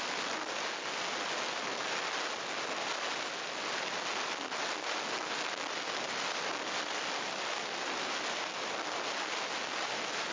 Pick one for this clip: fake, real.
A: real